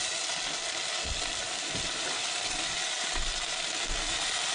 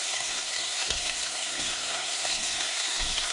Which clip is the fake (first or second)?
second